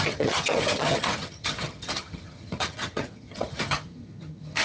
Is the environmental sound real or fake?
fake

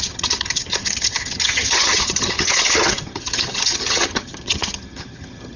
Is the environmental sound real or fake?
fake